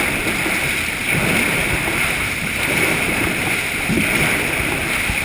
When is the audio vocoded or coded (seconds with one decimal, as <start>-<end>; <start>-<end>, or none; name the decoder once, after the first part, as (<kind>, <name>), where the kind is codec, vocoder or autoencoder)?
1.6-4.0 (vocoder, BigVGAN v2)